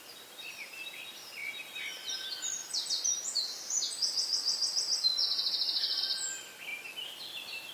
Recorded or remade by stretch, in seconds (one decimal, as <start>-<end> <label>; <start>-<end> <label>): 0.0-7.7 remade